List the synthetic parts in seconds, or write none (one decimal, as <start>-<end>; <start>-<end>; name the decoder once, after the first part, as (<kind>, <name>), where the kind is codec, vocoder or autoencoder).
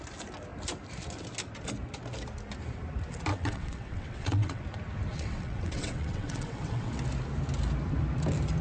3.3-4.6 (vocoder, WaveNeXt); 5.1-6.9